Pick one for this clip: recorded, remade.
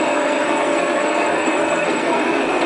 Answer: remade